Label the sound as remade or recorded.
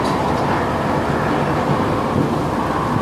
recorded